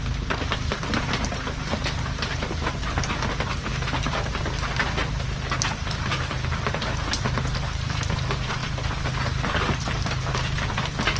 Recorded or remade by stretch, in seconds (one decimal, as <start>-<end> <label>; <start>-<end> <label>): 0.0-11.2 recorded